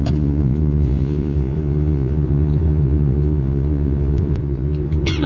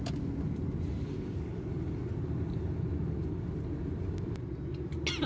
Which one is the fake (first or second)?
first